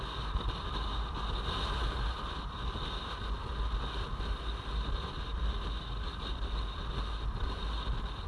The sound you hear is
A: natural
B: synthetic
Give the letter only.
A